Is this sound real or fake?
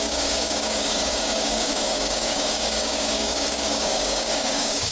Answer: fake